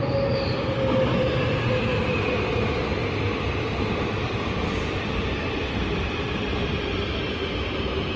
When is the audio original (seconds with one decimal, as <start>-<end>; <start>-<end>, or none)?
0.0-1.1; 2.0-2.8; 7.1-8.2